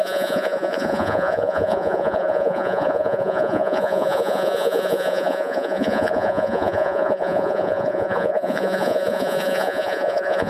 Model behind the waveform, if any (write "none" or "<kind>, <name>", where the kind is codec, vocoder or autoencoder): vocoder, Vocos